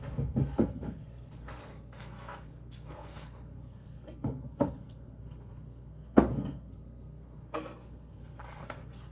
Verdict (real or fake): fake